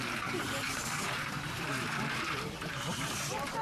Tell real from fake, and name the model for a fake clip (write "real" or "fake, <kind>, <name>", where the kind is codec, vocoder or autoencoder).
fake, vocoder, BigVGAN v2